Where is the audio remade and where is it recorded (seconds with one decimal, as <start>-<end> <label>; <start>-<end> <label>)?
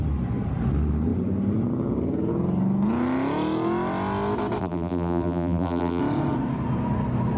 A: 0.0-4.6 recorded; 4.6-6.0 remade; 6.0-7.4 recorded